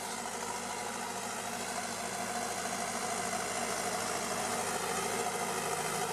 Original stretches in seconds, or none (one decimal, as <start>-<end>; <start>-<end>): 0.0-6.1